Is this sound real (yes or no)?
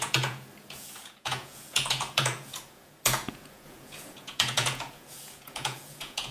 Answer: no